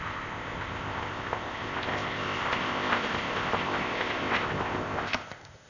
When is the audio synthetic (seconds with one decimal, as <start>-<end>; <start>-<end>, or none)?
0.0-5.7